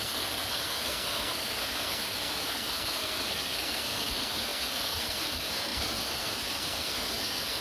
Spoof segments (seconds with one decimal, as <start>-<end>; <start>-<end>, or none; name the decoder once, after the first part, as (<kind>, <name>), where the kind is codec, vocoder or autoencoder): 0.0-7.6 (codec, SNAC)